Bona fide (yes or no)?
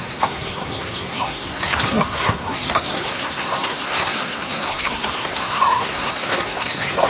no